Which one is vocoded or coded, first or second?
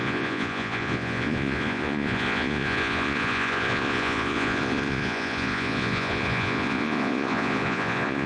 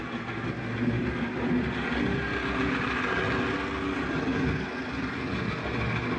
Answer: first